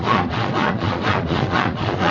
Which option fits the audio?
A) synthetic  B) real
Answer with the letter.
A